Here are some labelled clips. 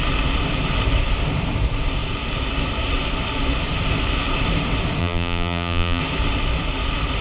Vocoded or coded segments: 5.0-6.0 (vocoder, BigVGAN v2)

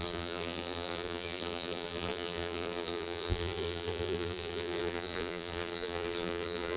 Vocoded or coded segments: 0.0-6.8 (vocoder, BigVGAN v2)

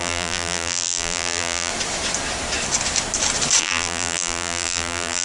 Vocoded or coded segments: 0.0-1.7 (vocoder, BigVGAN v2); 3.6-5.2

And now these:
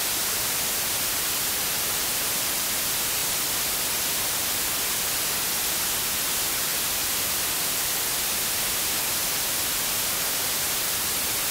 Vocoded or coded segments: none

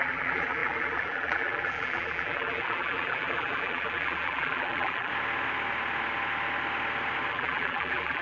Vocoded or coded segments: 0.0-5.1 (vocoder, BigVGAN v2); 7.3-8.2

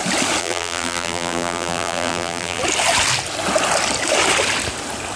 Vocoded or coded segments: 0.4-2.6 (vocoder, BigVGAN v2)

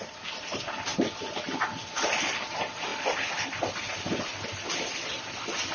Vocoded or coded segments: none

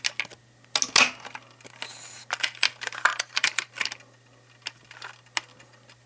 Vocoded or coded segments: 3.1-3.7 (vocoder, BigVGAN v2)